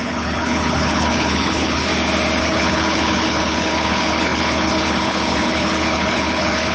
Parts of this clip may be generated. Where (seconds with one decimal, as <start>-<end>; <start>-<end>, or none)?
0.0-1.9; 2.4-6.7